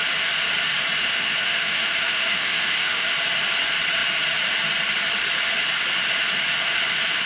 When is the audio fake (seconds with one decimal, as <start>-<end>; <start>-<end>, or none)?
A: 1.1-3.1